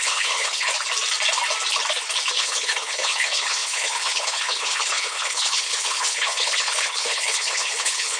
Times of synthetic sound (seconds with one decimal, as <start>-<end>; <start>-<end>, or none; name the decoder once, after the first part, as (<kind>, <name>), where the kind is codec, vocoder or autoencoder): 0.0-0.7 (codec, HILCodec); 2.3-8.2